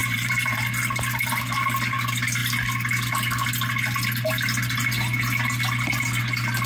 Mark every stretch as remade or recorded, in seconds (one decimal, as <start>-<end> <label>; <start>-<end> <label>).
0.0-0.6 remade; 0.6-6.7 recorded